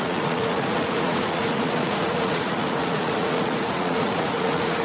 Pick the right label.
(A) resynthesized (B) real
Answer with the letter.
A